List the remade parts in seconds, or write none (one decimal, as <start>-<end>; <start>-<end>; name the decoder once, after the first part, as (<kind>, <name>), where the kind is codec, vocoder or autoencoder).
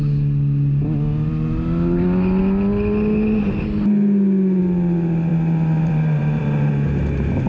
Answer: 5.3-6.4 (vocoder, BigVGAN v2)